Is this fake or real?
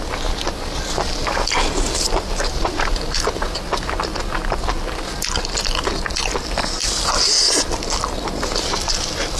real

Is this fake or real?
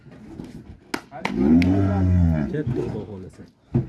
real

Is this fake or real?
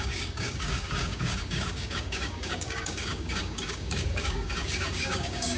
fake